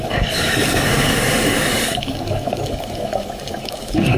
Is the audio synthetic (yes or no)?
yes